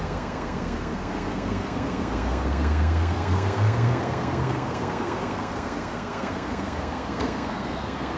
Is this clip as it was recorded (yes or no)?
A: no